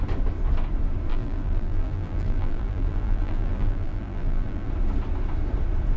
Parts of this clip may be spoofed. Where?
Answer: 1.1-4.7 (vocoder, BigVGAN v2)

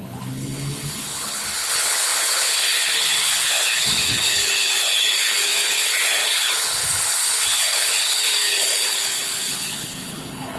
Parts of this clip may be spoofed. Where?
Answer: 0.0-10.6 (codec, HILCodec)

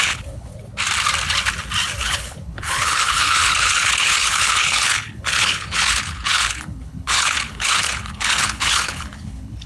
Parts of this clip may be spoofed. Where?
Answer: 0.0-0.5 (codec, HILCodec); 2.0-9.7

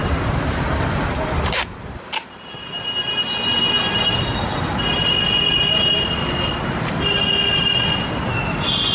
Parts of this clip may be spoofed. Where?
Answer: 0.0-3.1 (vocoder, BigVGAN v2)

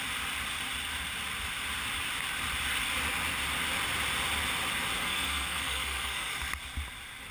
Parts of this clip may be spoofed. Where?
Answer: 5.0-6.3 (codec, SNAC)

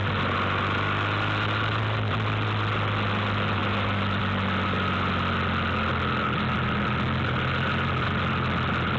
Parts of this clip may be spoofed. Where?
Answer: none

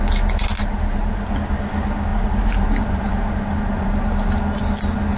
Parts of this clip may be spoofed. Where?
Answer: 0.6-1.3 (vocoder, BigVGAN v2); 2.1-4.3

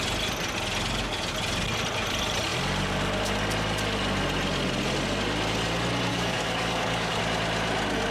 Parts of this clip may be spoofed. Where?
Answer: 6.1-7.2 (codec, DAC)